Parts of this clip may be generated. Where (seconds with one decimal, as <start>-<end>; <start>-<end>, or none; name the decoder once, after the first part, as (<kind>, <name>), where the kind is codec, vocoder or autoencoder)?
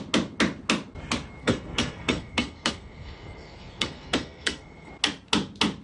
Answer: 1.4-4.9 (codec, SNAC)